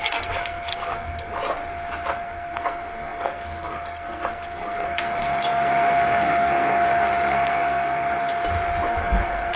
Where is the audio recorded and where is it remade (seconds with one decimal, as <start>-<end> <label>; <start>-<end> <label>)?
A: 0.0-1.3 remade; 1.3-2.1 recorded; 2.1-8.3 remade; 8.3-8.9 recorded; 8.9-9.6 remade